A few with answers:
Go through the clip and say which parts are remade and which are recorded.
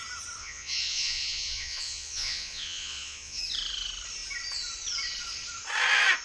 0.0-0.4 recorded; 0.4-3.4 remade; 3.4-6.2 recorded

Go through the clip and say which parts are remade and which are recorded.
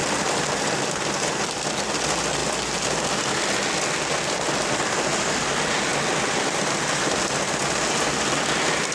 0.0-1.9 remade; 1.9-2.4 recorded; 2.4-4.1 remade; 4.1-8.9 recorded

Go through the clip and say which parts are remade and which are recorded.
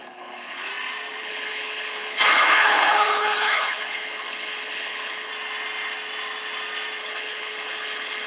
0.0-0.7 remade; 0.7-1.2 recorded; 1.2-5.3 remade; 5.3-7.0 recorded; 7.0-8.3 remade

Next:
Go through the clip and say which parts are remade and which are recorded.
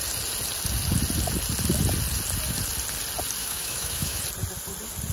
0.0-3.4 recorded; 3.4-4.2 remade; 4.2-5.1 recorded